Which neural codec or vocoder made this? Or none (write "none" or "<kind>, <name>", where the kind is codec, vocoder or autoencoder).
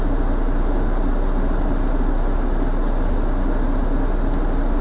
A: none